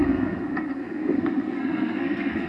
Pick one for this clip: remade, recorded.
remade